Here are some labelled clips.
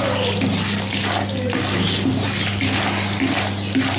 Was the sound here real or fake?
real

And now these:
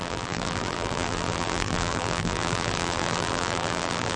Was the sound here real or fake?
fake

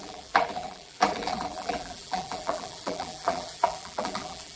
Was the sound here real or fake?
fake